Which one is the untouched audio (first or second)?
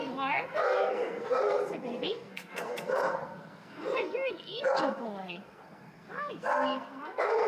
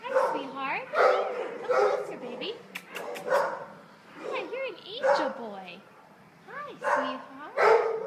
second